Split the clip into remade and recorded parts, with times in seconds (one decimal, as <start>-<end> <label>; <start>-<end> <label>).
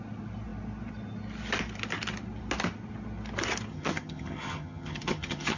0.0-3.7 recorded; 3.7-5.6 remade